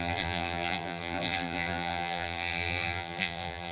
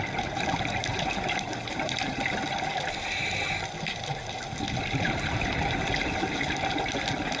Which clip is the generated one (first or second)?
first